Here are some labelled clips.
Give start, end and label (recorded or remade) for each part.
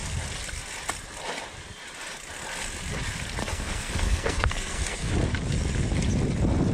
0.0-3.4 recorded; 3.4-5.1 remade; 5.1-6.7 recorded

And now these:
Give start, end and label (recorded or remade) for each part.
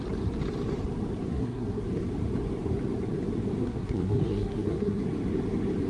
0.0-1.3 recorded; 1.3-1.8 remade; 1.8-3.6 recorded; 3.6-5.0 remade; 5.0-5.9 recorded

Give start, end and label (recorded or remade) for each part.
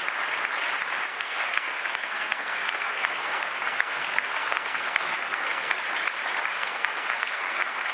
0.0-1.1 recorded; 1.1-5.8 remade; 5.8-6.5 recorded; 6.5-7.9 remade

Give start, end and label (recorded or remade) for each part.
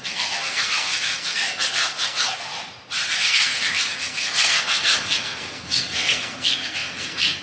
0.0-2.5 remade; 2.5-3.1 recorded; 3.1-7.4 remade